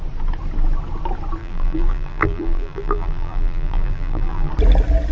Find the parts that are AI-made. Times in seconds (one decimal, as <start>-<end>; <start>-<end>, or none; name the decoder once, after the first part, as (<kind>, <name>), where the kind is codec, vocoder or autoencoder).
1.4-4.5 (vocoder, BigVGAN v2)